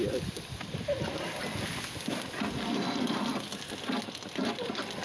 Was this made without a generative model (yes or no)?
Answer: yes